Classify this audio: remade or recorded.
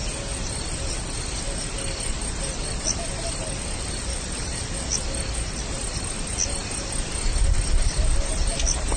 recorded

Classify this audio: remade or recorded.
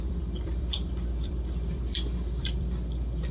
remade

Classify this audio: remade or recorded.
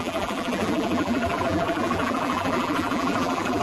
remade